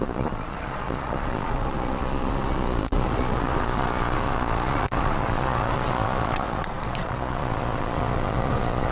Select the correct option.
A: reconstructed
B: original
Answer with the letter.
A